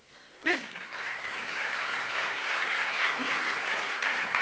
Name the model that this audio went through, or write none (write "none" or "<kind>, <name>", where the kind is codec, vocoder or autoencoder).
codec, SNAC